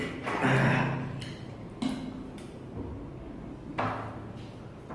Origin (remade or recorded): recorded